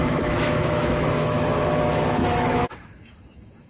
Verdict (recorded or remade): remade